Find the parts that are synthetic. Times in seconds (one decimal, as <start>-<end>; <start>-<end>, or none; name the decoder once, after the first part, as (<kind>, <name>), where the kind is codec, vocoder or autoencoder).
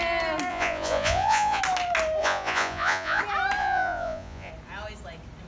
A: 0.5-1.6 (vocoder, Vocos); 2.2-3.2; 3.6-4.5